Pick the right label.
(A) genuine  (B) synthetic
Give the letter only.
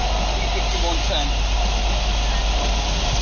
A